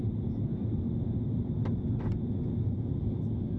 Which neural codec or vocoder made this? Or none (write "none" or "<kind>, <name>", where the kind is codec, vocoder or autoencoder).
none